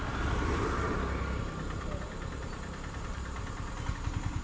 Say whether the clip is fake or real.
fake